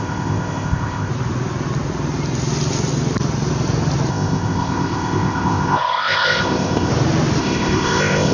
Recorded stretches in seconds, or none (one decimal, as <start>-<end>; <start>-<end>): 1.1-4.1; 6.9-7.4